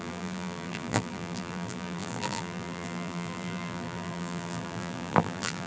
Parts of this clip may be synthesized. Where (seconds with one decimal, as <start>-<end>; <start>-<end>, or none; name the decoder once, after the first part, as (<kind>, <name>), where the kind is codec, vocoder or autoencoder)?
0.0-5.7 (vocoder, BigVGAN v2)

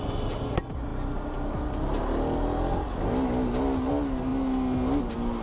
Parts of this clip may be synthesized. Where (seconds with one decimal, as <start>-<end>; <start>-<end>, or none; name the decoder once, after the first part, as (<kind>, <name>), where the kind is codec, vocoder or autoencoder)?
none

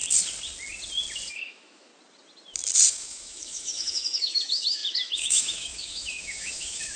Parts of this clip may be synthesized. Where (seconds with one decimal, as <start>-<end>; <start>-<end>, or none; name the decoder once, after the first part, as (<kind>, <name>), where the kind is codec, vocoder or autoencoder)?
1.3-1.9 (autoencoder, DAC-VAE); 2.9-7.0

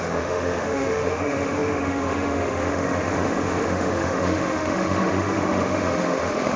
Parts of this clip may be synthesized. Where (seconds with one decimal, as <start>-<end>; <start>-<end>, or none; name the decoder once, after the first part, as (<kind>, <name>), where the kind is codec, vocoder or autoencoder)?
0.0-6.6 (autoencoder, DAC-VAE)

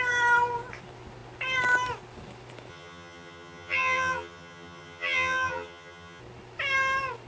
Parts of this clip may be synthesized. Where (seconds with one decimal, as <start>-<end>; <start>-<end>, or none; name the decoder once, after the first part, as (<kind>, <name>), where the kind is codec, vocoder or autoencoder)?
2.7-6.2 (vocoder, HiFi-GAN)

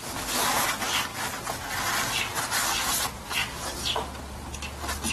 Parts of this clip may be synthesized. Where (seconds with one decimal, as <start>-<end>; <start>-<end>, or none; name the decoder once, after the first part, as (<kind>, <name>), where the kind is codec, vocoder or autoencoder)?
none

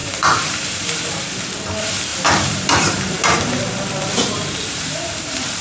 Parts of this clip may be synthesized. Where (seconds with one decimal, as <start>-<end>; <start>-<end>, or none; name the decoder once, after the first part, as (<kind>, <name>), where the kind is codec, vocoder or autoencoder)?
0.0-1.4 (vocoder, BigVGAN v2); 2.1-5.6

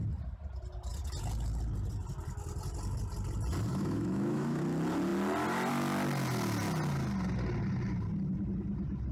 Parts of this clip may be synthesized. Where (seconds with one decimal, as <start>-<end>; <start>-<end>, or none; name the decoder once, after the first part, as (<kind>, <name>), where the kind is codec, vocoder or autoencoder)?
3.7-4.6 (autoencoder, DAC-VAE)